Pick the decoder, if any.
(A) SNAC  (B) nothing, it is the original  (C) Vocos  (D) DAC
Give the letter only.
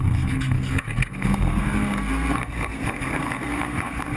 A